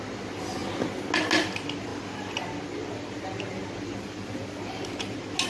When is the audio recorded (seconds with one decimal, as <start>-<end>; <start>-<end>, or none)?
0.0-5.5